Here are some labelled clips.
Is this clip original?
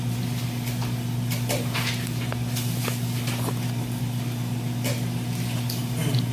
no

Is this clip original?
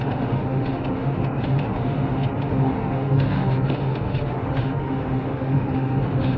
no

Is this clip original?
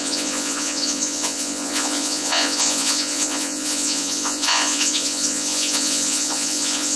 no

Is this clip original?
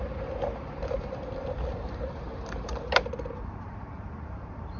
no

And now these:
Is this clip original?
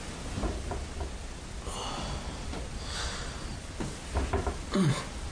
yes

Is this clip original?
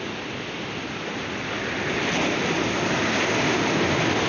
yes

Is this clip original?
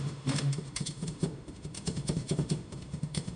no